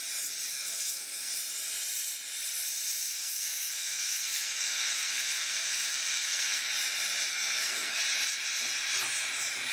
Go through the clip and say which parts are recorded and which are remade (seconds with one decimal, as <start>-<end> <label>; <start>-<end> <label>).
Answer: 0.0-0.5 recorded; 0.5-1.3 remade; 1.3-3.1 recorded; 3.1-6.7 remade; 6.7-7.3 recorded; 7.3-8.0 remade; 8.0-9.7 recorded